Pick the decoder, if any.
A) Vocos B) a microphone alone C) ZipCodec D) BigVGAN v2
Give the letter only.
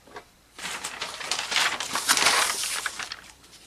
D